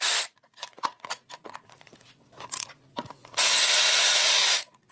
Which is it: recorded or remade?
remade